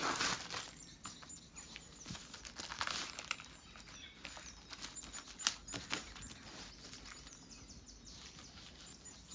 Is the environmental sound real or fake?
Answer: real